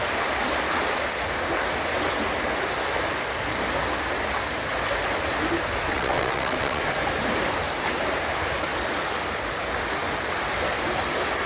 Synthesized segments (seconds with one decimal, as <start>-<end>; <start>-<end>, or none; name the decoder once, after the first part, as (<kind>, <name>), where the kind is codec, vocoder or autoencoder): 5.9-6.8 (vocoder, WaveNeXt)